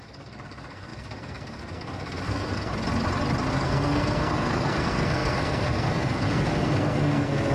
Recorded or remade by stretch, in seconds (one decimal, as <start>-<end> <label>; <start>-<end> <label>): 0.0-2.7 remade; 2.7-3.5 recorded; 3.5-7.5 remade